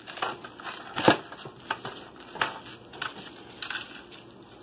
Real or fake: real